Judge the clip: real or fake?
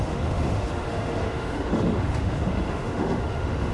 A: fake